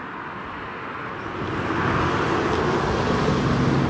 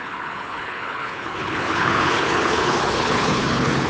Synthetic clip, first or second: second